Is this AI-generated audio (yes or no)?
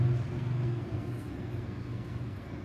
yes